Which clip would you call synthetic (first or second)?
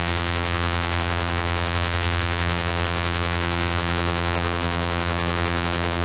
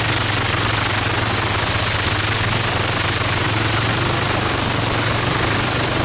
first